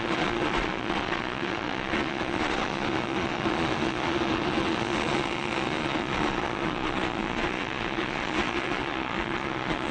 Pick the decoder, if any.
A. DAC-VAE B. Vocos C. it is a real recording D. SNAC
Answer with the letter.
B